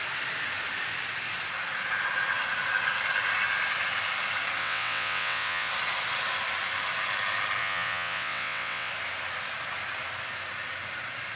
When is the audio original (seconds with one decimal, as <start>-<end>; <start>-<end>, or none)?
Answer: 0.0-4.6; 5.7-7.6; 8.9-11.4